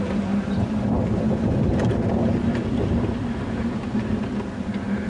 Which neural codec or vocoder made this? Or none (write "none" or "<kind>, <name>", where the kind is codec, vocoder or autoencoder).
vocoder, BigVGAN v2